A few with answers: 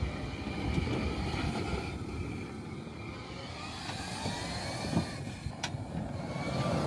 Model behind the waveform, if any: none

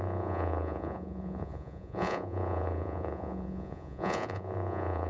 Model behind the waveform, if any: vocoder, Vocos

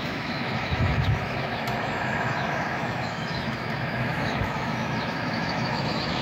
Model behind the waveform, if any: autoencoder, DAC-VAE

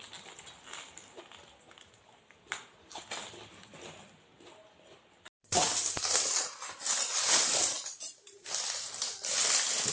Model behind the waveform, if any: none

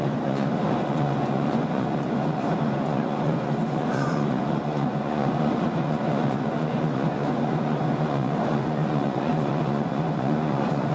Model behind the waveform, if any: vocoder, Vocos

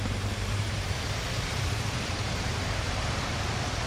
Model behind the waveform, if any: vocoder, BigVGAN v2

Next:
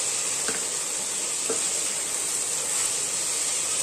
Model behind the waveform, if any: none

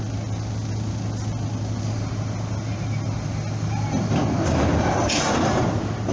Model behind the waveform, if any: none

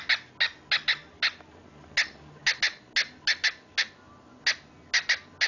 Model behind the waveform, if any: none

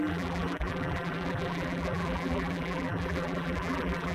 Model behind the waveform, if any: vocoder, BigVGAN v2